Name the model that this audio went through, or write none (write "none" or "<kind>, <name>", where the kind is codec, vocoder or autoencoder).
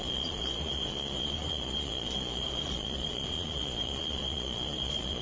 vocoder, Vocos